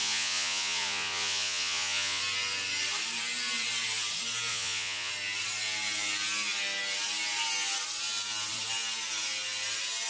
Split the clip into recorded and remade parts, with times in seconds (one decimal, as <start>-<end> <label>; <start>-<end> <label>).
0.0-2.2 remade; 2.2-4.5 recorded; 4.5-5.1 remade; 5.1-10.1 recorded